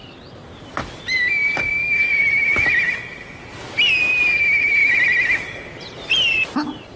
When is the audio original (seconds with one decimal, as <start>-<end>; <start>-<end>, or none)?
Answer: 0.0-7.0